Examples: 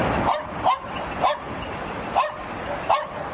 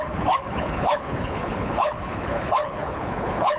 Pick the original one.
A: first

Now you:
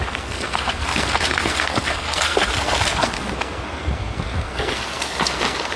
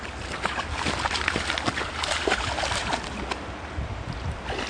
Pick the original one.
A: second